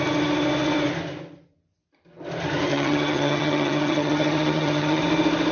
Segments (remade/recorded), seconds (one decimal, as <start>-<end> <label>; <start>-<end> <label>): 0.0-2.7 recorded; 2.7-5.0 remade; 5.0-5.5 recorded